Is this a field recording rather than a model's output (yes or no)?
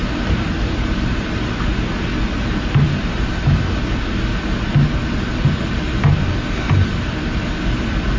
yes